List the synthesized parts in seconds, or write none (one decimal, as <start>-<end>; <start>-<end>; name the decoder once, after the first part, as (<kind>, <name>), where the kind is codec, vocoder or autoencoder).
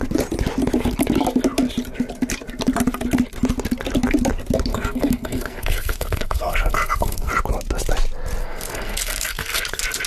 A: 4.7-7.3 (codec, SNAC); 8.4-9.6